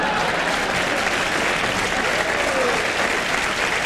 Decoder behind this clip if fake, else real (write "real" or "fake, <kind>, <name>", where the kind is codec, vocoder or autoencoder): real